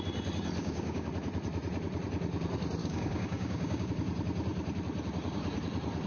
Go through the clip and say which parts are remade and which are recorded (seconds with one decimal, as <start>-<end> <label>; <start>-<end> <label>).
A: 0.0-0.6 recorded; 0.6-1.1 remade; 1.1-2.8 recorded; 2.8-3.9 remade; 3.9-6.1 recorded